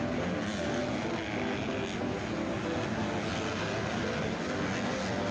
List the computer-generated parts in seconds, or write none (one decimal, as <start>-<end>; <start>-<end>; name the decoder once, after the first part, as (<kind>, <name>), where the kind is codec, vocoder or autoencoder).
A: none